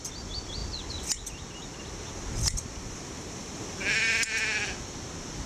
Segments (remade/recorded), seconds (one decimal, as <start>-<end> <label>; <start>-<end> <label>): 0.0-5.5 recorded